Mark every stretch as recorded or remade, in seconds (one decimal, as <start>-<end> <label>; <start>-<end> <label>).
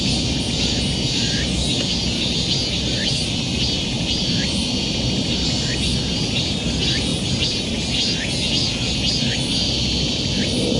0.0-10.8 recorded